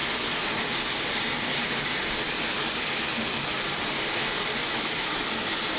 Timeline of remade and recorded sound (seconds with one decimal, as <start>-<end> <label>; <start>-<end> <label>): 0.0-4.6 recorded; 4.6-5.2 remade; 5.2-5.8 recorded

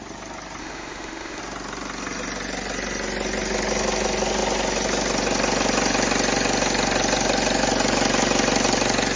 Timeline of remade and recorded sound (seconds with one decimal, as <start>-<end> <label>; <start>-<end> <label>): 0.0-0.6 recorded; 0.6-1.4 remade; 1.4-9.2 recorded

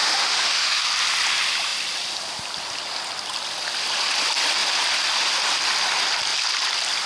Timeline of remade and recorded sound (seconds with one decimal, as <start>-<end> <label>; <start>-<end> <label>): 0.0-0.8 remade; 0.8-7.1 recorded

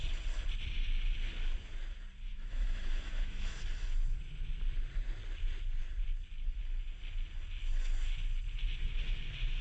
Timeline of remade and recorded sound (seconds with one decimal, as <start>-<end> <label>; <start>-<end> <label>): 0.0-2.3 recorded; 2.3-3.6 remade; 3.6-9.6 recorded